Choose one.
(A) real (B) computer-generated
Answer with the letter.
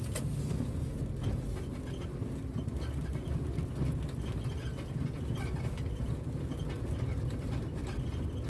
A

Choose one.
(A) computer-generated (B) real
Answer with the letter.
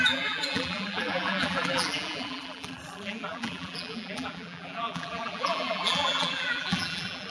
A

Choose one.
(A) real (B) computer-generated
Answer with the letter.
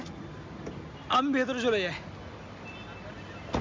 A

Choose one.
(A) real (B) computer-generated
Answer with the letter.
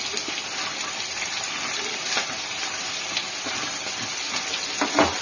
B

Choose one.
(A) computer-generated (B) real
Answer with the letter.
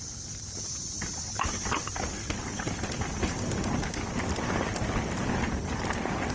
B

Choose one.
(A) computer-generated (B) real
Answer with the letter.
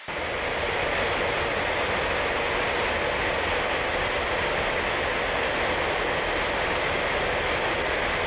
B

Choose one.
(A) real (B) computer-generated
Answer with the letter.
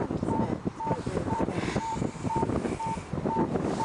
B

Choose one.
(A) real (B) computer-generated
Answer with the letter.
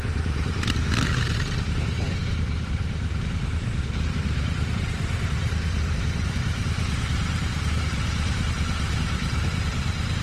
B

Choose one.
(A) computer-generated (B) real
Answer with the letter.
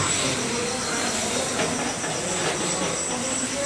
A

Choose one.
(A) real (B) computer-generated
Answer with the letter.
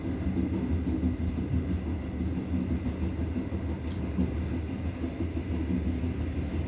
A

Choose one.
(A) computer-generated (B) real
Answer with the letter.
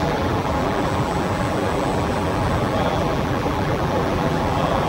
A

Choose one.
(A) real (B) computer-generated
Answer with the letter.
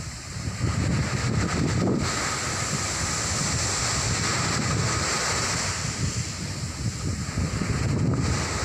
A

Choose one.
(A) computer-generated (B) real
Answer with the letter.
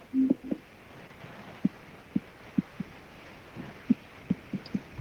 B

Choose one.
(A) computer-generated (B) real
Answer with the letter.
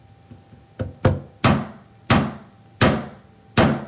B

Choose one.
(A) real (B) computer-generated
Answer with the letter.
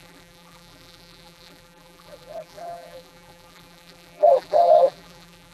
B